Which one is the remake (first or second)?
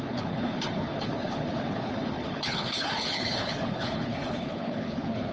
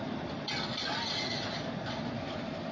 first